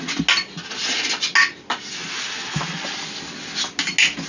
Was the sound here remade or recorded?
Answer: recorded